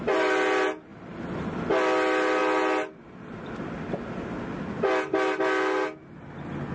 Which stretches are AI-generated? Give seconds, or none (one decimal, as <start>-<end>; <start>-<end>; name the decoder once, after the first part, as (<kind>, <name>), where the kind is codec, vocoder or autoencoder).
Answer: none